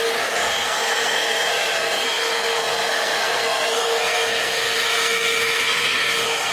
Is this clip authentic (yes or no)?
no